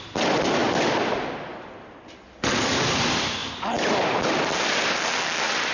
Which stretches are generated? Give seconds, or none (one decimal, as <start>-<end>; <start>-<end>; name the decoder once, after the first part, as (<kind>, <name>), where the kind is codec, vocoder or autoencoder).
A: none